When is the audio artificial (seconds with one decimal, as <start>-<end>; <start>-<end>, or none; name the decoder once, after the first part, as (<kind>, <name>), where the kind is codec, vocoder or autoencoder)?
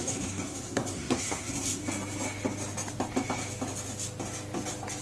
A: 0.0-1.8 (codec, SNAC)